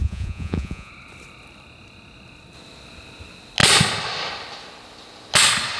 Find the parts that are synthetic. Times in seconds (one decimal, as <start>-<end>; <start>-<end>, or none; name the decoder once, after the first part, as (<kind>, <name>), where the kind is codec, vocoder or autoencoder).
0.0-0.9 (vocoder, Vocos)